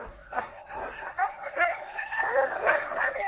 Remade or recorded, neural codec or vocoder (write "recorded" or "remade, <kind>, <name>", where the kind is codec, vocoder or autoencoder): remade, codec, SNAC